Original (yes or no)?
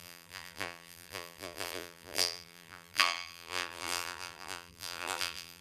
no